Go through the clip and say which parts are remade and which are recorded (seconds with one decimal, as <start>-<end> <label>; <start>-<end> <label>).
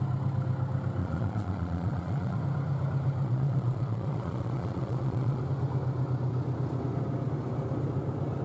0.0-1.0 recorded; 1.0-2.4 remade; 2.4-3.2 recorded; 3.2-5.4 remade; 5.4-8.4 recorded